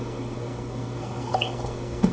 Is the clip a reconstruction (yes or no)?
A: yes